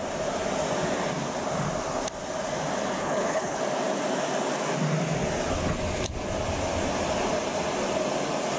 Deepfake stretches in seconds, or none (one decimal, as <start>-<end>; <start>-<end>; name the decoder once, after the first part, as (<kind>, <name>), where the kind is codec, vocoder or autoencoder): 3.0-3.6 (codec, HILCodec)